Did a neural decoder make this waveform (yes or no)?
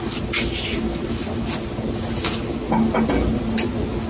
no